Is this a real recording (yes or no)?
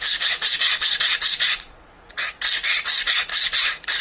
no